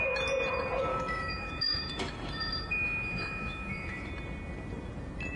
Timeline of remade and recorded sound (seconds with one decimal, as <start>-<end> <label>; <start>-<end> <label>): 0.0-0.9 recorded; 0.9-4.1 remade; 4.1-5.4 recorded